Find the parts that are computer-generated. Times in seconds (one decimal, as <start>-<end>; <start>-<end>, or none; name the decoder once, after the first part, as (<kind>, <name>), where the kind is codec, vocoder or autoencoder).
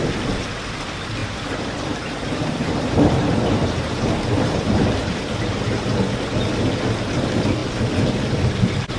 1.2-5.2 (vocoder, BigVGAN v2)